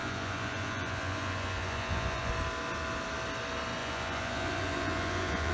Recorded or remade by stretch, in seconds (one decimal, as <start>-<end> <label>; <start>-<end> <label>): 0.0-2.3 remade; 2.3-3.8 recorded; 3.8-5.5 remade